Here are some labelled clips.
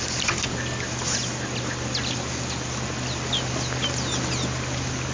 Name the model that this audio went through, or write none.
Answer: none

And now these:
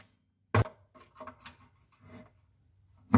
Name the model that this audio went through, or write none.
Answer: none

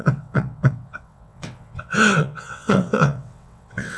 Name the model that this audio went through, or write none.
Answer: vocoder, WaveNeXt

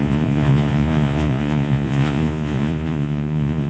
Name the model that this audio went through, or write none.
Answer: vocoder, Vocos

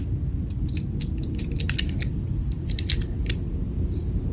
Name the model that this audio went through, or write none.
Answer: none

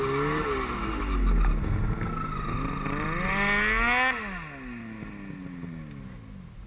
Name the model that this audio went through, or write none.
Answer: none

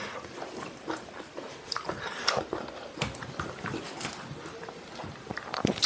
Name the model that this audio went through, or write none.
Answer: vocoder, BigVGAN v2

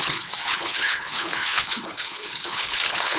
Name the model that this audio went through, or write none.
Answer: codec, HILCodec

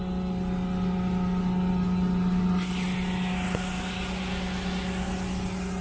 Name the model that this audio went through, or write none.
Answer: none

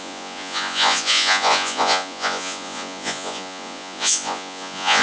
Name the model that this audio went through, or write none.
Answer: vocoder, Vocos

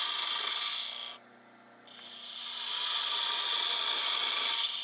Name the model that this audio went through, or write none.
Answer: none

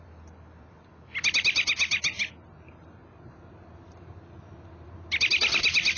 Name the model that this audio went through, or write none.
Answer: vocoder, BigVGAN v2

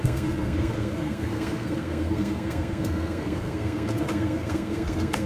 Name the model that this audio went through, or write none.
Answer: codec, SNAC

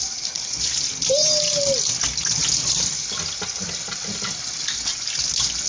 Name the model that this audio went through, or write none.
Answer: none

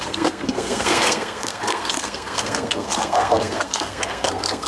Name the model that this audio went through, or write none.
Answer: codec, SNAC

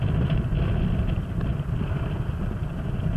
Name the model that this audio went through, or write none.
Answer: vocoder, BigVGAN v2